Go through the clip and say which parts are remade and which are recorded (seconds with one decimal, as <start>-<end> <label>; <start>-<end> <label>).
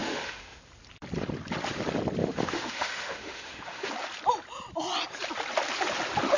0.0-0.6 remade; 0.6-2.2 recorded; 2.2-3.9 remade; 3.9-6.4 recorded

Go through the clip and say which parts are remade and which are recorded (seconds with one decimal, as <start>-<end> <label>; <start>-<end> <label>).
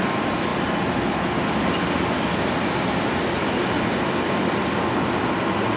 0.0-5.8 recorded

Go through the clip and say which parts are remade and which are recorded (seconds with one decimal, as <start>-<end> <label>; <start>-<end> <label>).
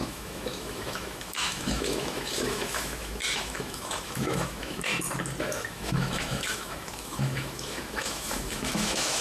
0.0-4.9 remade; 4.9-5.4 recorded; 5.4-9.2 remade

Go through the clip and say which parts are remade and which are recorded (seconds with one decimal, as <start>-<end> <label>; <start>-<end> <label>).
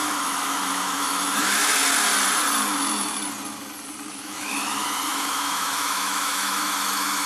0.0-1.6 remade; 1.6-4.1 recorded; 4.1-7.3 remade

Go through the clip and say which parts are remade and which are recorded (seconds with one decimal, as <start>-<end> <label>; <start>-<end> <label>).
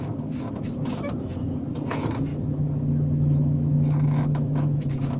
0.0-5.2 remade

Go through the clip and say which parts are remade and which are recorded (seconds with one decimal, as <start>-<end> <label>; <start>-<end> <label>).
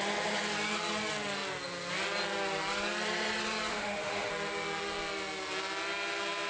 0.0-3.7 recorded; 3.7-4.3 remade; 4.3-6.5 recorded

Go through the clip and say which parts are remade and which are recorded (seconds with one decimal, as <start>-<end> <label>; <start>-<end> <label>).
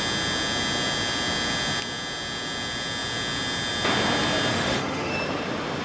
0.0-4.5 recorded; 4.5-5.1 remade; 5.1-5.8 recorded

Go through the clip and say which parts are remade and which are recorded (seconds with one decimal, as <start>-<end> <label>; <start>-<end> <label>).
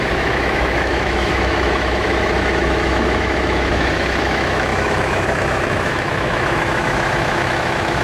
0.0-8.0 remade